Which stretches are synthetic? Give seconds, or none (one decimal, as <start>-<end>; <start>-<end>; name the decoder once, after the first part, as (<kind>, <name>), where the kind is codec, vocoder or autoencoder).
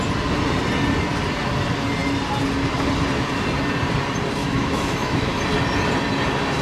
4.4-5.4 (autoencoder, DAC-VAE)